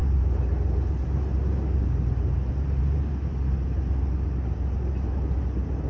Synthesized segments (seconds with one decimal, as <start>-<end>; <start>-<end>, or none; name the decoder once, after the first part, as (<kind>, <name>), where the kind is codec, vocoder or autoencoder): none